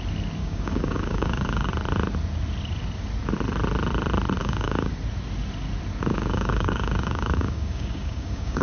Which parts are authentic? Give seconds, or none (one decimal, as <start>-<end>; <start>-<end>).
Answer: 0.0-0.4; 1.7-4.4; 4.9-6.1